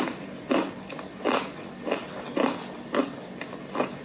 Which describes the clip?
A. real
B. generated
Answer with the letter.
A